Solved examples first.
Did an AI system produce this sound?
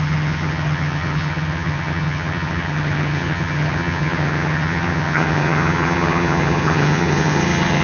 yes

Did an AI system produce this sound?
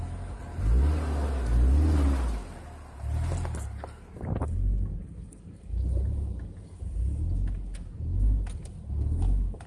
no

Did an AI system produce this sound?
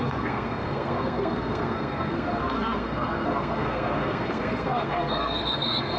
yes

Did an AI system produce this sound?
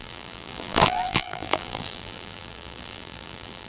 yes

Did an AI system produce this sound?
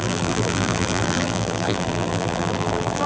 yes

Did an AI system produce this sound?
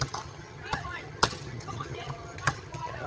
yes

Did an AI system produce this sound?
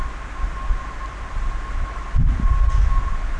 no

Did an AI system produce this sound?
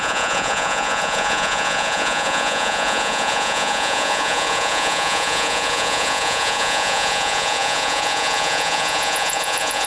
yes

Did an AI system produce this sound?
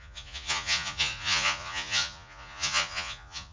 yes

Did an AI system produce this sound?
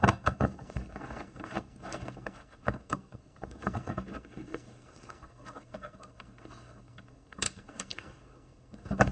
yes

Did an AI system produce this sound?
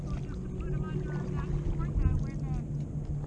no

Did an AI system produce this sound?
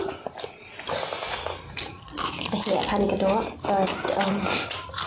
no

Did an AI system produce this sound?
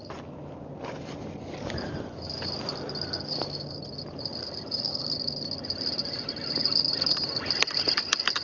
yes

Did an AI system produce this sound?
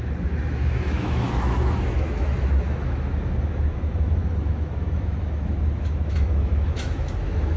yes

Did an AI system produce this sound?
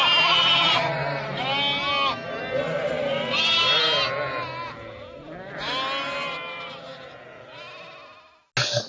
no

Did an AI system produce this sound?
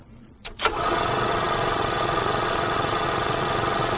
yes